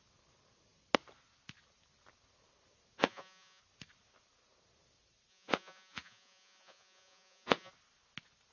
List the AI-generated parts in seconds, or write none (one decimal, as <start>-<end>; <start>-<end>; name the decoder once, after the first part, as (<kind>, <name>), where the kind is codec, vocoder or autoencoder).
3.0-3.6 (vocoder, Vocos); 5.3-7.7